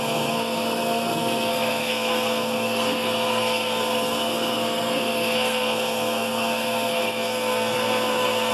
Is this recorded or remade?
remade